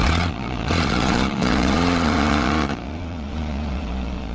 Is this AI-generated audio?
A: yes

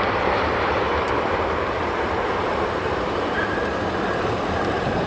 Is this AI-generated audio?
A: yes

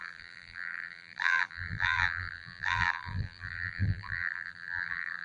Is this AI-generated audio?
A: yes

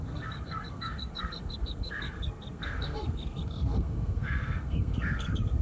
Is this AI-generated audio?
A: yes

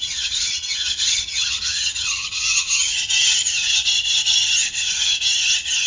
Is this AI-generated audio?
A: yes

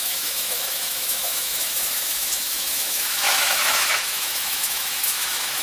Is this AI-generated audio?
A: yes